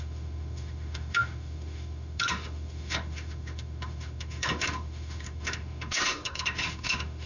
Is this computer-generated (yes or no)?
yes